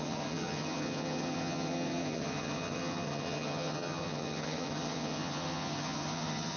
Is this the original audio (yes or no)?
no